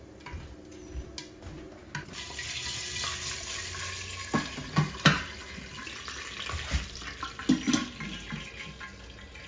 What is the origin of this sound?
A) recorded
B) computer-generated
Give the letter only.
A